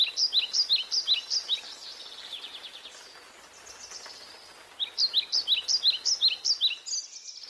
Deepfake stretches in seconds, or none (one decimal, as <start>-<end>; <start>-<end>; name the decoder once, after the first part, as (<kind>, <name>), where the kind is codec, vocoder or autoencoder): none